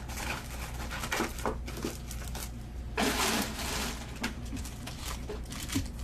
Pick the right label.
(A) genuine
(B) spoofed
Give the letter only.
A